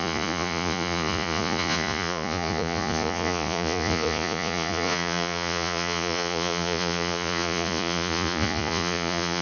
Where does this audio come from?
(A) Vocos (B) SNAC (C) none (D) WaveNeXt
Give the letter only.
A